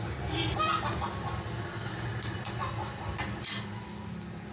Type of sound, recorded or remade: recorded